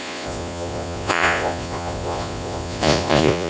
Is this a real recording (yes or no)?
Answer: no